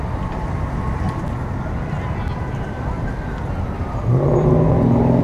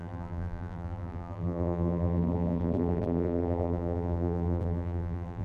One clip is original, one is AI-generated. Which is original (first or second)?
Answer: first